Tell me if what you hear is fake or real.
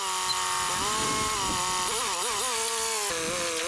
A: real